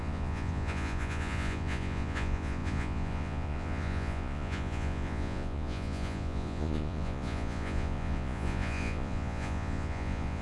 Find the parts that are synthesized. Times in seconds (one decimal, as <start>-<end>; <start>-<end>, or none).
0.0-10.4